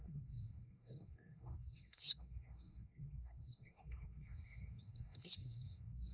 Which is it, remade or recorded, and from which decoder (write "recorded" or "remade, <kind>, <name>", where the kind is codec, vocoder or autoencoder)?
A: remade, codec, SNAC